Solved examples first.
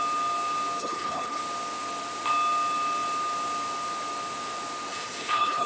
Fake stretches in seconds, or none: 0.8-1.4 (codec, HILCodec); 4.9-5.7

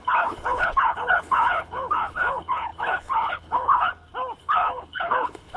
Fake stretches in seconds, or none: 0.0-3.9 (codec, HILCodec); 4.4-5.6